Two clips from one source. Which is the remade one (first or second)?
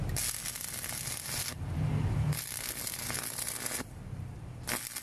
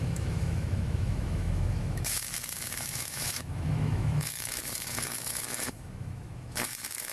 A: second